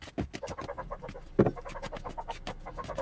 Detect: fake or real real